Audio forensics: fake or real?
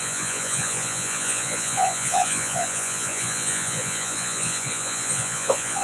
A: fake